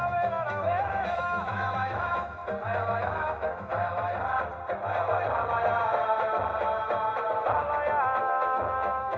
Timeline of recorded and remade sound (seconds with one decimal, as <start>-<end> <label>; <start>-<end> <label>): 0.0-2.4 remade; 2.4-3.0 recorded; 3.0-3.7 remade; 3.7-8.2 recorded; 8.2-9.2 remade